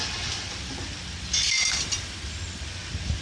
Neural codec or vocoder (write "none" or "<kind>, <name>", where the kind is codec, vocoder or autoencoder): none